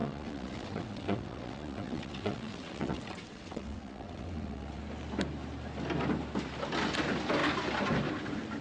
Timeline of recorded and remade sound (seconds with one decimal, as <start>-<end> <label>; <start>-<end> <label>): 0.0-4.8 remade; 4.8-8.6 recorded